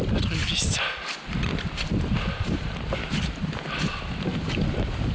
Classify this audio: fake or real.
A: real